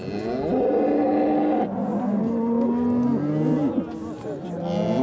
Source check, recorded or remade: recorded